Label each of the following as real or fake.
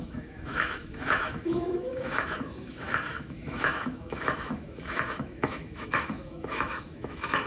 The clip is fake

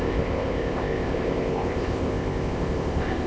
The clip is fake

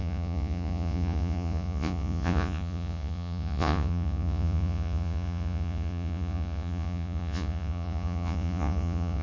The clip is fake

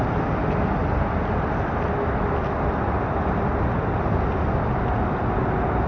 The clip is real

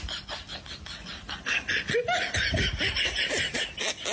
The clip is real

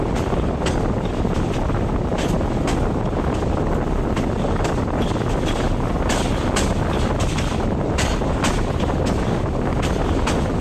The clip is real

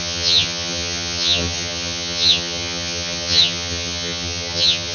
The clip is fake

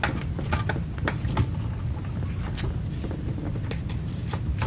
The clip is real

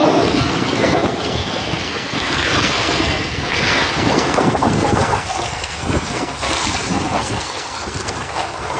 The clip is fake